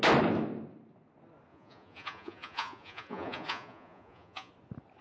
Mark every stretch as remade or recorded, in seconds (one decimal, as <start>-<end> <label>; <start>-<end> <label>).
0.0-1.5 recorded; 1.5-4.5 remade; 4.5-5.0 recorded